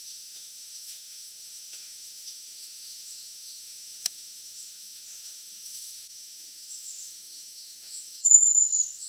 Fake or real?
fake